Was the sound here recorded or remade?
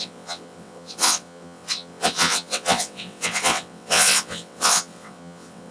remade